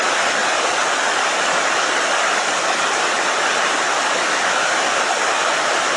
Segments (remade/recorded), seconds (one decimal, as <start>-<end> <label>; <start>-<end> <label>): 0.0-6.0 recorded